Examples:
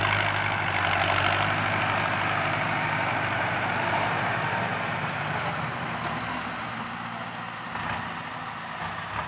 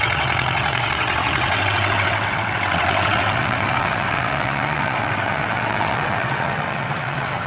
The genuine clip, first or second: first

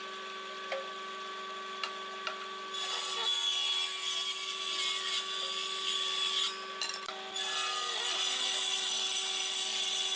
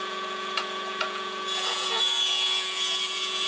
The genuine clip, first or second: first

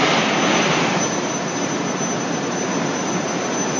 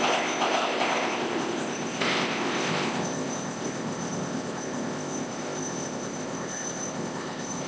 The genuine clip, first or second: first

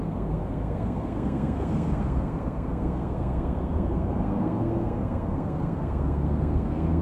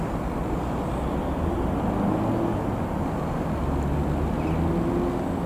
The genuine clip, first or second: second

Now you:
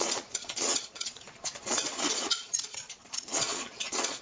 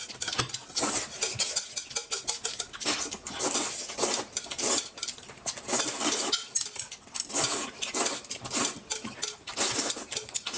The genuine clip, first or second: second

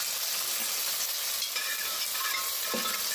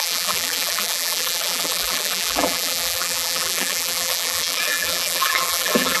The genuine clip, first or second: first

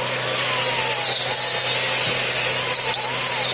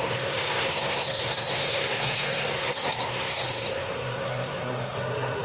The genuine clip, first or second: first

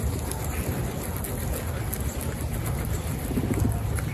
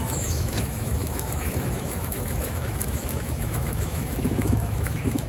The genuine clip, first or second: first